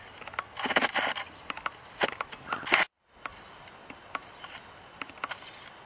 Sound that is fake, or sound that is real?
real